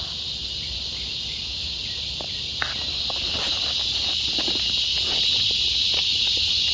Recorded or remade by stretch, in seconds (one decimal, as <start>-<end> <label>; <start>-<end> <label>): 0.0-6.1 recorded; 6.1-6.7 remade